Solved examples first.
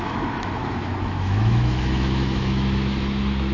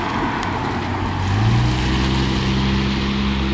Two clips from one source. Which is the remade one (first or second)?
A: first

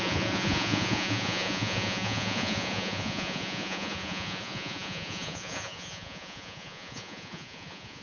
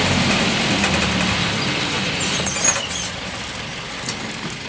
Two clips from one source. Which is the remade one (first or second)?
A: first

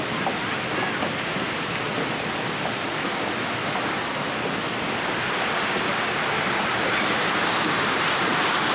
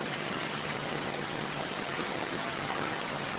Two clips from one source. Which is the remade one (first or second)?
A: second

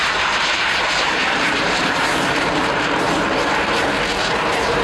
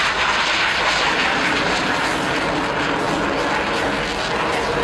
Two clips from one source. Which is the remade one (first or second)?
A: first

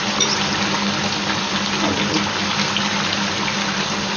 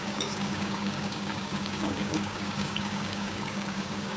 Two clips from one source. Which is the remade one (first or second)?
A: second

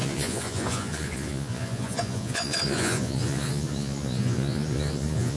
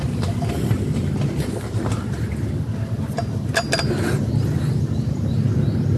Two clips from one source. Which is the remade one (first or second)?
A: first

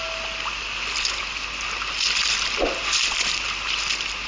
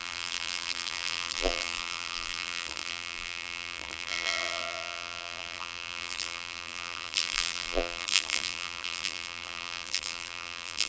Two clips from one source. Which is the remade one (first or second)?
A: second